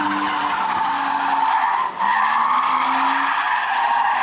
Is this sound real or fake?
real